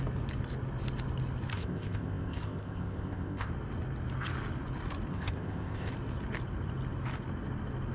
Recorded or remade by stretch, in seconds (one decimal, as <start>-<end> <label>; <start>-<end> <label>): 0.0-1.5 recorded; 1.5-3.5 remade; 3.5-5.1 recorded; 5.1-5.9 remade; 5.9-7.9 recorded